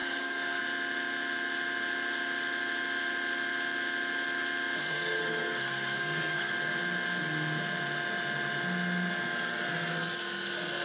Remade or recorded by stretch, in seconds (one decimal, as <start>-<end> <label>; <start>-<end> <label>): 0.0-0.6 remade; 0.6-4.8 recorded; 4.8-6.5 remade; 6.5-10.8 recorded